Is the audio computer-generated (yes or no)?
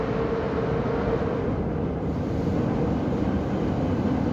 no